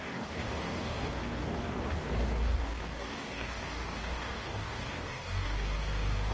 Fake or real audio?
fake